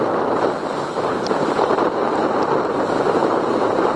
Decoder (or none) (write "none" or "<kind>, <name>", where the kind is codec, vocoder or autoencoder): vocoder, BigVGAN v2